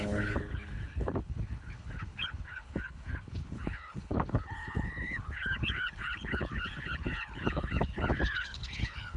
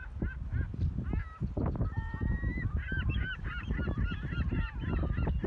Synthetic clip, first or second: first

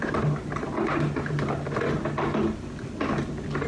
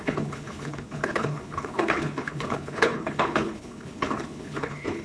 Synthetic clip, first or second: second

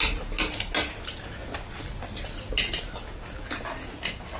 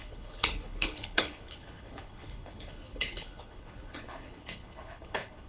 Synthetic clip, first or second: second